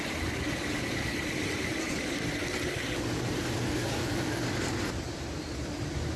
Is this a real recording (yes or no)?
yes